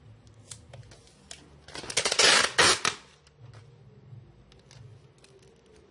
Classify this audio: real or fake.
real